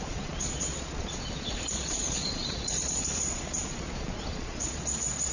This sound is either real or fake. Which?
fake